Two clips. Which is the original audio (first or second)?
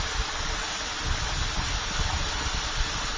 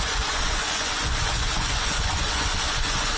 first